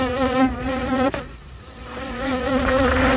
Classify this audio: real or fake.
fake